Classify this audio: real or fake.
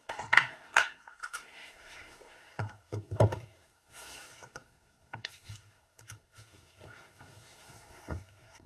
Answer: fake